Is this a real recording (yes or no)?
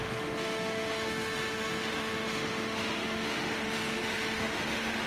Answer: no